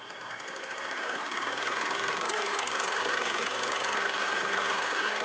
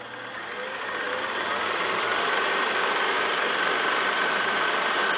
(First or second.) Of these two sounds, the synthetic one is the first